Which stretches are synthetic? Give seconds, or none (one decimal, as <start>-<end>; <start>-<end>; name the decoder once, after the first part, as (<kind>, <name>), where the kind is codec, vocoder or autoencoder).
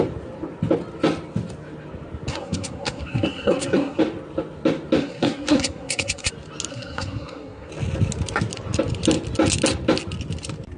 2.3-4.0 (codec, SNAC); 5.0-6.3; 6.7-7.7